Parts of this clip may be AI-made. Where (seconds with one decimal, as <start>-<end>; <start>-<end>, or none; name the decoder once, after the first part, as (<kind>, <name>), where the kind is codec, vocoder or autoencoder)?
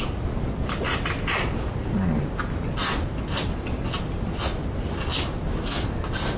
none